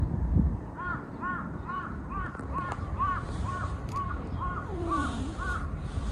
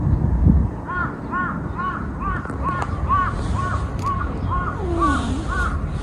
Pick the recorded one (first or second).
second